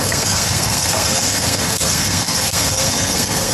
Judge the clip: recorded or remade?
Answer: remade